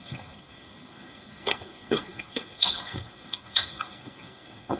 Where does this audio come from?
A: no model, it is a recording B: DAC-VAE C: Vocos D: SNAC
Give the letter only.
D